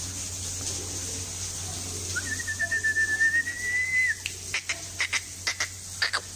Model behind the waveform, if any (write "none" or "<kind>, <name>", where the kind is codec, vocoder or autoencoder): none